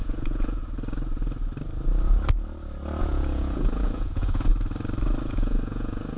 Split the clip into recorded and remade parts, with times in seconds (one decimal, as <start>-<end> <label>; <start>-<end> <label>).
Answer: 0.0-0.6 remade; 0.6-3.0 recorded; 3.0-4.5 remade; 4.5-5.3 recorded; 5.3-6.2 remade